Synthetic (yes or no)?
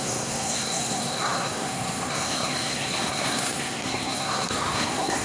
yes